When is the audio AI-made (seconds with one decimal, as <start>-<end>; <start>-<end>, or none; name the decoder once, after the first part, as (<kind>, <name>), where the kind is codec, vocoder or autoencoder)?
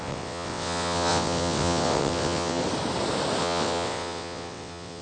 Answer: 0.0-2.6 (vocoder, WaveNeXt); 3.4-5.0